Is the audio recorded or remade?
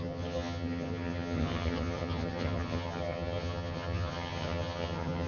remade